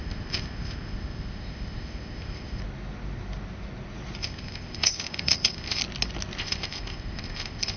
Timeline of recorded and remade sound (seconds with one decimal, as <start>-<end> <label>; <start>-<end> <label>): 0.0-2.6 remade; 2.6-4.2 recorded; 4.2-5.8 remade; 5.8-6.4 recorded; 6.4-7.8 remade